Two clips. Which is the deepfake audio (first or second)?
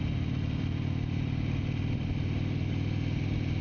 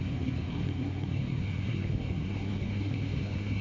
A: second